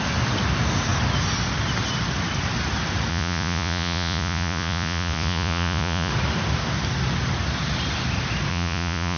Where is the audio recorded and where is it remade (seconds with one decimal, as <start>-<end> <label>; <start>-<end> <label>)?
0.0-3.1 recorded; 3.1-6.1 remade; 6.1-8.5 recorded; 8.5-9.2 remade